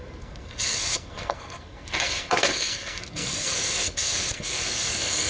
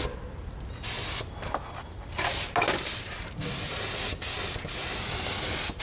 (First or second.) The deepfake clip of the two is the first